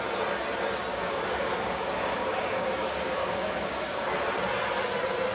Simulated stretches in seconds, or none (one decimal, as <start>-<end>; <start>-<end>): 0.9-4.1